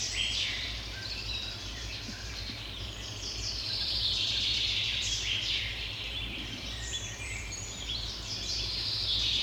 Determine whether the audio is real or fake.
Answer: fake